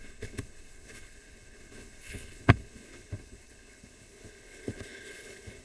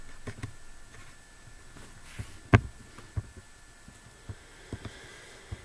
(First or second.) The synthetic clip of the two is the first